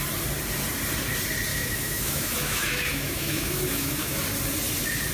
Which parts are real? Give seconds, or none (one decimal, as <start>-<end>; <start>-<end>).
0.0-1.5; 4.2-5.1